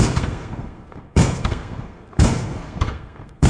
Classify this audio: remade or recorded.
remade